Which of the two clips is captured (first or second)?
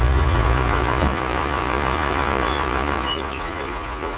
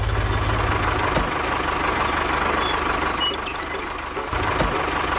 second